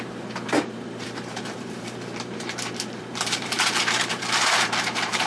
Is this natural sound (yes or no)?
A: no